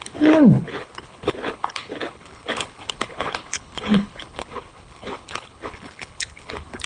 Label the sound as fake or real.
fake